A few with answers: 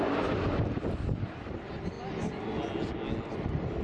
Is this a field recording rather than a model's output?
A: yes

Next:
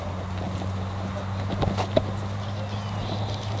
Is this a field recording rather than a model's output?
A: yes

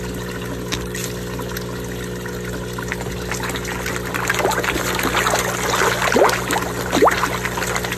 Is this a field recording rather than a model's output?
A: yes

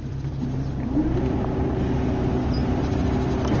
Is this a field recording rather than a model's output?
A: yes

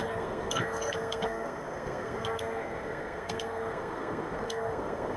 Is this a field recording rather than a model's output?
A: no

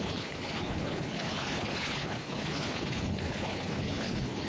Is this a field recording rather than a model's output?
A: no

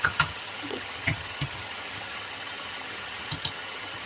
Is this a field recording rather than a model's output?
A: no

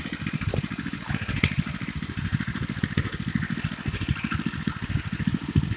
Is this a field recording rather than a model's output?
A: yes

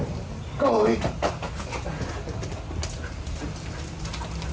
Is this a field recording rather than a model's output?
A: yes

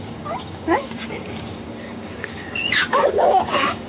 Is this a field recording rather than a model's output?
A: no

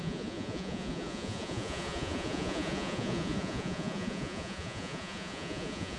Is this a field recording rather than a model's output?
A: no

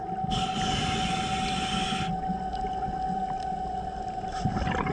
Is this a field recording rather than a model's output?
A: yes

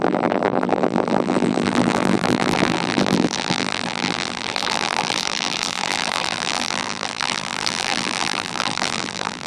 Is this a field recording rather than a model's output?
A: no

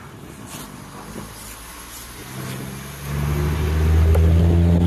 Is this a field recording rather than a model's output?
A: yes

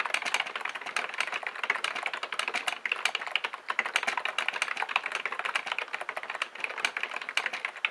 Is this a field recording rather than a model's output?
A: yes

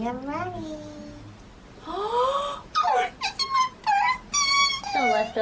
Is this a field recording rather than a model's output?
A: yes